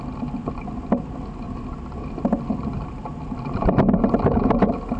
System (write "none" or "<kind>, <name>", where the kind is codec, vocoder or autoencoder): none